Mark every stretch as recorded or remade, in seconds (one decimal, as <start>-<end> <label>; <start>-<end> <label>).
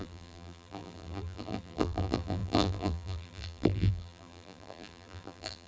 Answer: 0.0-5.7 remade